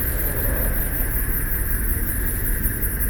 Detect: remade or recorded recorded